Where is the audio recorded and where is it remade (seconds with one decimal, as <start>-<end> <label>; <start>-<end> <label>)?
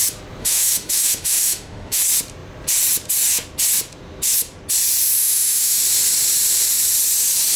0.0-0.4 recorded; 0.4-2.0 remade; 2.0-5.2 recorded; 5.2-5.8 remade; 5.8-7.6 recorded